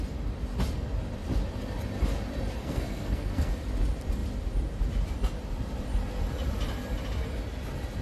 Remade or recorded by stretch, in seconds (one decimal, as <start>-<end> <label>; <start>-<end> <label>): 0.0-2.6 recorded; 2.6-3.5 remade; 3.5-8.0 recorded